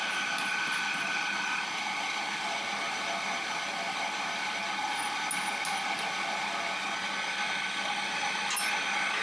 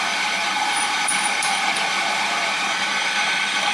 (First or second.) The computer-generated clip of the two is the second